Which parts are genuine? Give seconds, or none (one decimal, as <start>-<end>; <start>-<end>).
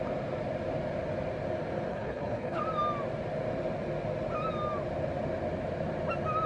0.0-1.9; 2.6-6.5